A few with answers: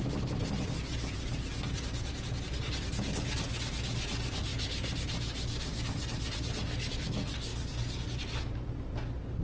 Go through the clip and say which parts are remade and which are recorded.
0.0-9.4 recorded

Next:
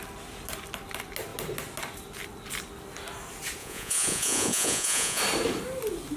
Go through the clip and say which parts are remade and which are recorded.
0.0-3.6 recorded; 3.6-5.2 remade; 5.2-6.2 recorded

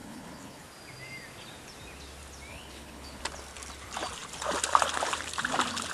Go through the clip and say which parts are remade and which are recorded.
0.0-0.6 remade; 0.6-2.5 recorded; 2.5-3.2 remade; 3.2-5.9 recorded

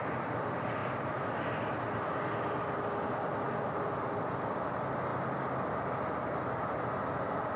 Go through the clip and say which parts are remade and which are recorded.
0.0-7.6 recorded

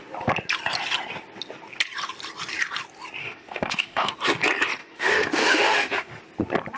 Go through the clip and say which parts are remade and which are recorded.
0.0-3.2 recorded; 3.2-4.1 remade; 4.1-4.8 recorded; 4.8-6.2 remade; 6.2-6.8 recorded

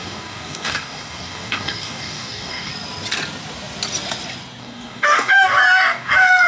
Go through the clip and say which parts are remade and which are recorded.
0.0-2.7 remade; 2.7-4.6 recorded; 4.6-6.5 remade

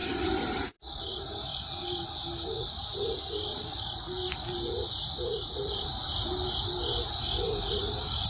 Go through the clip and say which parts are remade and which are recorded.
0.0-8.3 recorded

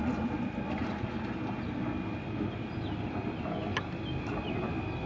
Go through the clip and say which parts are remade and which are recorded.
0.0-5.1 recorded